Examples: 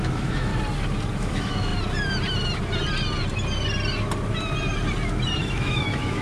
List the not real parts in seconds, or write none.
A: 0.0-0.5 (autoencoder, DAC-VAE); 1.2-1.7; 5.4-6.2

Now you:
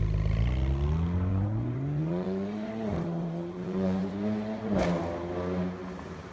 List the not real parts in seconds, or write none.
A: 1.3-4.8 (vocoder, Vocos)

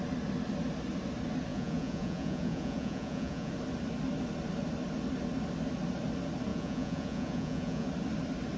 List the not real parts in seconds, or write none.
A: 1.5-3.5 (vocoder, Vocos); 6.5-7.9

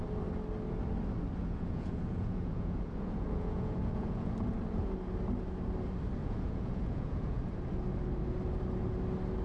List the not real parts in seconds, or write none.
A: 1.4-4.3 (vocoder, Vocos); 6.2-7.4

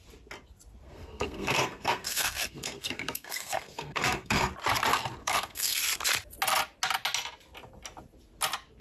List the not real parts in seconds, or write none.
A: 0.8-4.5 (codec, SNAC); 5.2-5.8

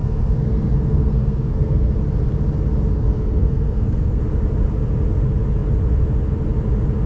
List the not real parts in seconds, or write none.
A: 0.0-1.9 (codec, SNAC); 2.9-4.2

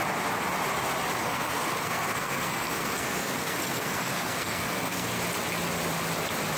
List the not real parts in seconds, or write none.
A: 1.2-5.2 (codec, SNAC)

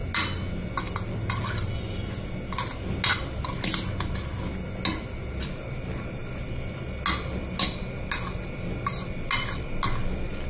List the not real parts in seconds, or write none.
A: none